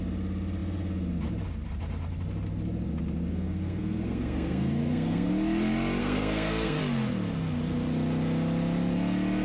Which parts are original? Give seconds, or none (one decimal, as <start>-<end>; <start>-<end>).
0.0-3.3; 5.3-6.0; 6.8-9.4